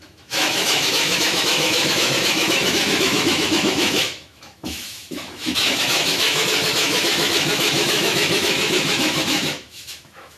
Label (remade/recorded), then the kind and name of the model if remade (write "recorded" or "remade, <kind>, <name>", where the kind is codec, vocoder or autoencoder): remade, autoencoder, DAC-VAE